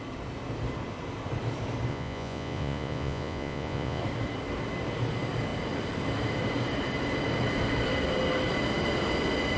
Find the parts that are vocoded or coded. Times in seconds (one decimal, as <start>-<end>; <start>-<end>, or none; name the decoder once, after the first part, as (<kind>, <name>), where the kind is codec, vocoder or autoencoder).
1.9-4.0 (vocoder, Vocos)